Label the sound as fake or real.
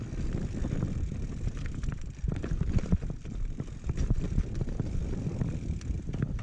fake